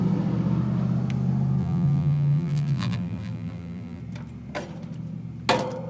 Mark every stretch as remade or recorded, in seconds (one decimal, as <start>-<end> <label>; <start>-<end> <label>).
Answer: 0.0-1.6 recorded; 1.6-4.0 remade; 4.0-5.9 recorded